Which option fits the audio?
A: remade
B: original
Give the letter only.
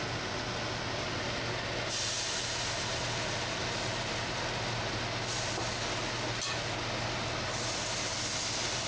B